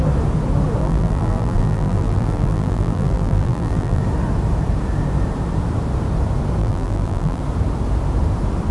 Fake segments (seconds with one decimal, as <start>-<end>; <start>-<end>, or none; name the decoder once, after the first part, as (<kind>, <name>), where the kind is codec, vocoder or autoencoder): 0.8-4.0 (vocoder, BigVGAN v2); 6.6-7.4